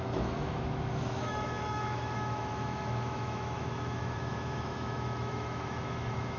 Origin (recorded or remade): remade